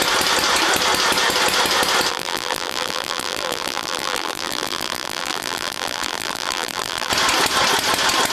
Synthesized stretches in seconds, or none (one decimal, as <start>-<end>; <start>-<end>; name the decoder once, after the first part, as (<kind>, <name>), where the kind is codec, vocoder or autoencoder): 2.1-7.1 (vocoder, BigVGAN v2)